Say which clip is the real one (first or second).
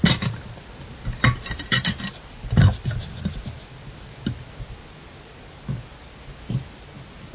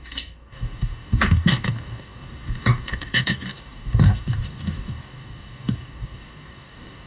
first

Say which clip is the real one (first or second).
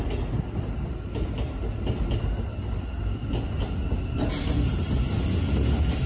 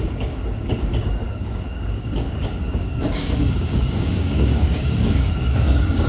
first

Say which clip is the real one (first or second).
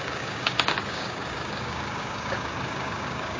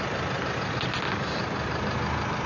second